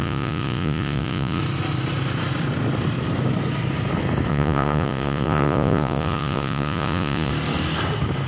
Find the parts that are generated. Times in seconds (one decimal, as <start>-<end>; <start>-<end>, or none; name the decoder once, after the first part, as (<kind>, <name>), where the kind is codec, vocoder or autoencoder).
0.0-1.4 (vocoder, Vocos); 4.3-7.3